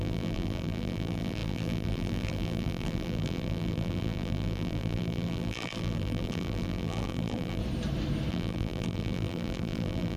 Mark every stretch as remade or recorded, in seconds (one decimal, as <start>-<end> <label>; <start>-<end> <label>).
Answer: 0.0-7.6 remade; 7.6-8.3 recorded; 8.3-10.2 remade